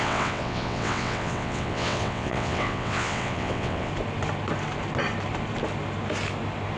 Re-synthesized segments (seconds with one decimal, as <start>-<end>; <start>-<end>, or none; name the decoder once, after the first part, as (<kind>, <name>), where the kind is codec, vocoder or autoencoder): 0.0-3.9 (vocoder, WaveNeXt)

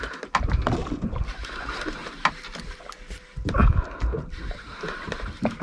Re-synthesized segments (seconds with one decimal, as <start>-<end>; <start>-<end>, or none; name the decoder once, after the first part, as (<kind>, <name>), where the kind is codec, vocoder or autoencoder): none